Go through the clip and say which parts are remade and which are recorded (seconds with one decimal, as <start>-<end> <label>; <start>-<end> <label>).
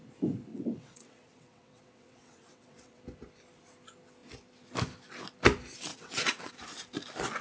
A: 0.0-0.5 recorded; 0.5-3.0 remade; 3.0-5.9 recorded; 5.9-6.5 remade; 6.5-7.4 recorded